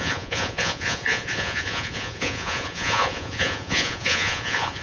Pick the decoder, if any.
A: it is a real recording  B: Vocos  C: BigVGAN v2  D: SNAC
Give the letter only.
B